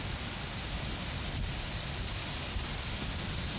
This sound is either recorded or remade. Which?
recorded